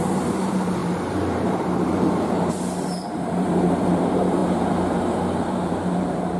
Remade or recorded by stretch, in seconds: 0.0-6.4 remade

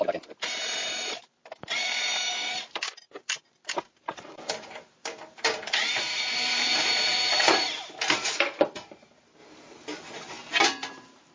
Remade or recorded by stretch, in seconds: 0.0-9.4 remade; 9.4-10.6 recorded; 10.6-11.3 remade

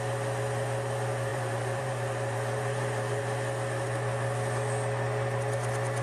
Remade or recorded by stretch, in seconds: 0.0-1.3 recorded; 1.3-3.2 remade; 3.2-6.0 recorded

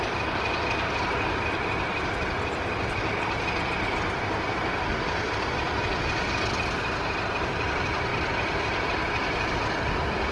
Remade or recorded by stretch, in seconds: 0.0-10.3 recorded

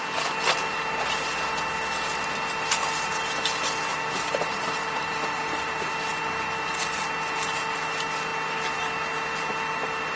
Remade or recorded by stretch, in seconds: 0.0-3.9 recorded; 3.9-5.9 remade; 5.9-10.2 recorded

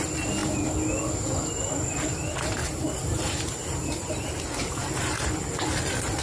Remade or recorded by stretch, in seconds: 0.0-2.6 recorded; 2.6-5.2 remade; 5.2-6.2 recorded

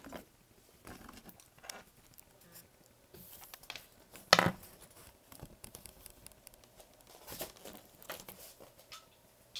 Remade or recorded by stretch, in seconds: 0.0-5.0 recorded; 5.0-5.9 remade; 5.9-9.6 recorded